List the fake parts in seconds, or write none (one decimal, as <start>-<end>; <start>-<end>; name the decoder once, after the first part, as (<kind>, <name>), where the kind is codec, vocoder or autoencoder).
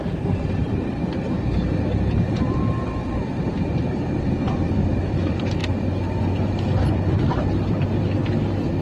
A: 0.0-5.6 (vocoder, BigVGAN v2); 6.1-8.8